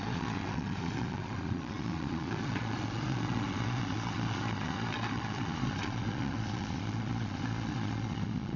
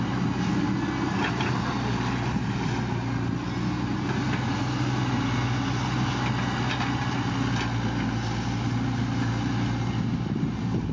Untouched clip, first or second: second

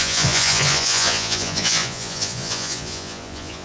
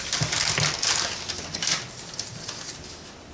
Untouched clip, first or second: second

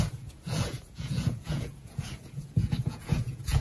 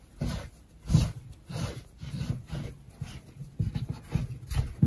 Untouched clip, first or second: second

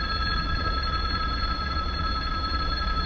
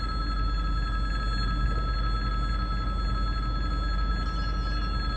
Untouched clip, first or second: second